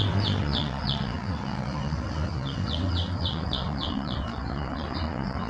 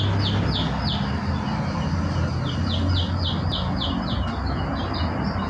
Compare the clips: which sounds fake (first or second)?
first